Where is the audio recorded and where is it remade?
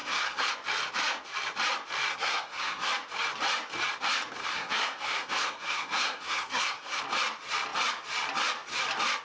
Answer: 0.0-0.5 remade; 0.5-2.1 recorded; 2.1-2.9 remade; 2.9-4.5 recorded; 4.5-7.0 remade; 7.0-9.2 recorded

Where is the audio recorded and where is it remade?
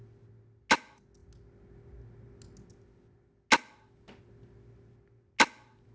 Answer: 0.0-5.9 recorded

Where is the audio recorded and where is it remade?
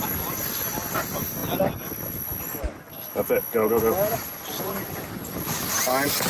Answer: 0.0-6.3 recorded